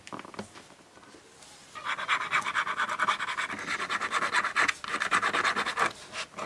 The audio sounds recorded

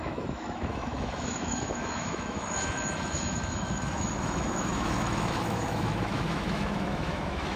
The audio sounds remade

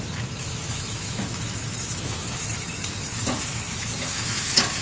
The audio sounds remade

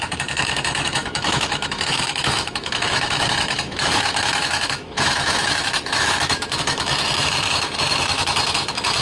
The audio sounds remade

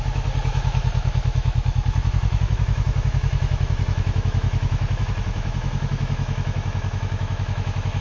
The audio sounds remade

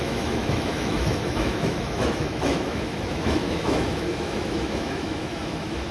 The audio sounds remade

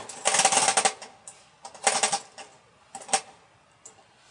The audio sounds recorded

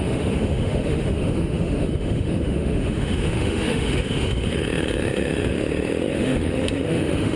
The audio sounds remade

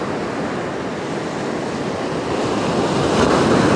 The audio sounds recorded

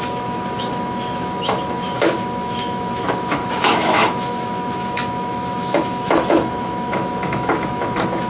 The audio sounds remade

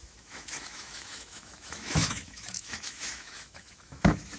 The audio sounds remade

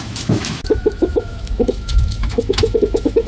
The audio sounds remade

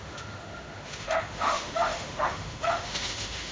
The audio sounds remade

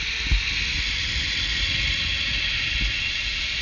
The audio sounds recorded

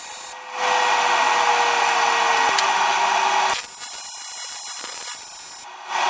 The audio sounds recorded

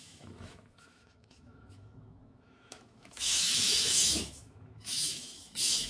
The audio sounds remade